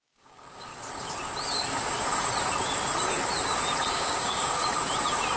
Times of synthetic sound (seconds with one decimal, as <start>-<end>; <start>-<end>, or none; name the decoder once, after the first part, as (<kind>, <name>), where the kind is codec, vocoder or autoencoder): 0.0-0.7 (codec, DAC); 3.9-4.6

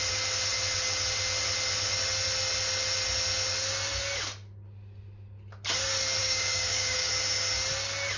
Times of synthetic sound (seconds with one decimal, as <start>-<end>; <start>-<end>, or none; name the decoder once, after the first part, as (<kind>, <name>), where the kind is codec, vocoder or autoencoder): 6.2-7.1 (codec, DAC)